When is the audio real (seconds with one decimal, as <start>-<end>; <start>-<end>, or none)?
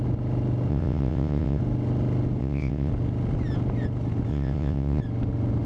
0.0-0.7; 1.6-2.4; 2.9-4.3; 5.0-5.7